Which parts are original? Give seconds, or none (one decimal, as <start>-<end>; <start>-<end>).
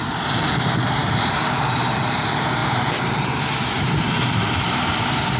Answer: 0.0-5.4